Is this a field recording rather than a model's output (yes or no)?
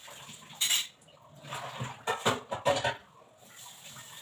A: yes